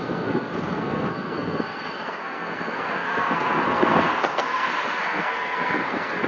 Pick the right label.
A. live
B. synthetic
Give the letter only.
B